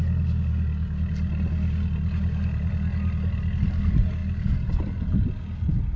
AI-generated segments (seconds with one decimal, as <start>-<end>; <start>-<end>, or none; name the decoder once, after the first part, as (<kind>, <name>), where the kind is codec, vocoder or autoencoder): none